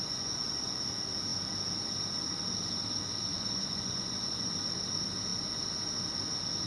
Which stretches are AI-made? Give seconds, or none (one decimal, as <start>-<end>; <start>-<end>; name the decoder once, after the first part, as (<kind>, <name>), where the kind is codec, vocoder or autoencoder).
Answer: 0.0-0.8 (vocoder, Vocos); 3.3-4.5